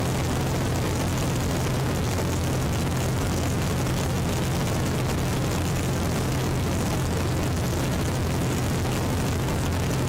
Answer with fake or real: real